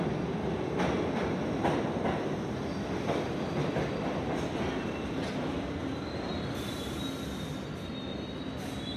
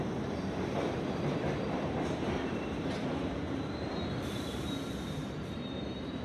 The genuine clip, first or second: first